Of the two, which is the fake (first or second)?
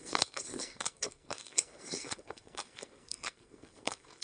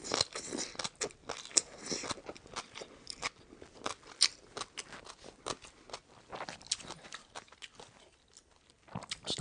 first